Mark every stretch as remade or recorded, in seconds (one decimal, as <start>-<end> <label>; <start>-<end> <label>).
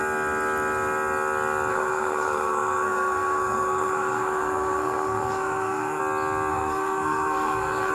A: 0.0-1.7 recorded; 1.7-6.0 remade; 6.0-6.5 recorded; 6.5-7.9 remade